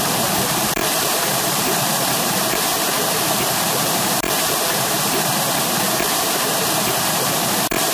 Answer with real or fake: fake